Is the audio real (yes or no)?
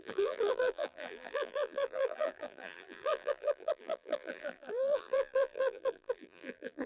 no